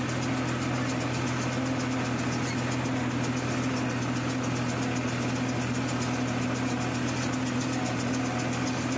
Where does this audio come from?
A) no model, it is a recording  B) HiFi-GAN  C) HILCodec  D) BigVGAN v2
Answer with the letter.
A